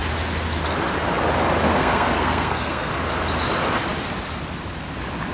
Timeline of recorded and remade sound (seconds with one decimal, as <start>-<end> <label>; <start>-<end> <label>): 0.0-1.7 recorded; 1.7-2.9 remade; 2.9-5.3 recorded